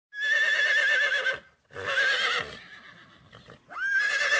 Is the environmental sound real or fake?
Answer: real